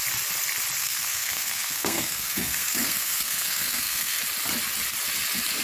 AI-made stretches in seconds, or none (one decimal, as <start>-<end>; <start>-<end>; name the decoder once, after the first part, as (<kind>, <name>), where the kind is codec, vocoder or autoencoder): 0.8-4.2 (codec, SNAC)